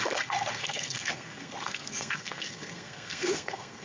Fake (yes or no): yes